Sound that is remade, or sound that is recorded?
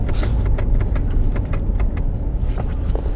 recorded